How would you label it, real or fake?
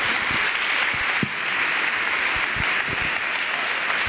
real